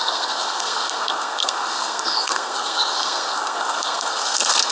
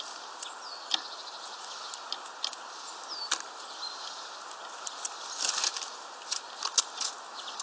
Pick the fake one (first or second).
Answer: first